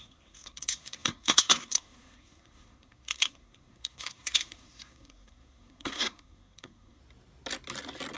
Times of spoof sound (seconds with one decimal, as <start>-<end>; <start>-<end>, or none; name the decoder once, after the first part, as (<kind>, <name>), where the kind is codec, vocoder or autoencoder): 0.0-7.0 (codec, SNAC)